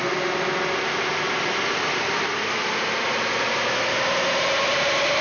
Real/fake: real